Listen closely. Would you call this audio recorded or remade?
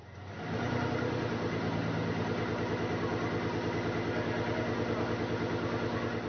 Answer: recorded